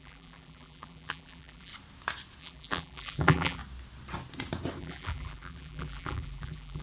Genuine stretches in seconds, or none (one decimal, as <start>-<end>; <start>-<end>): 1.7-2.4; 3.6-4.8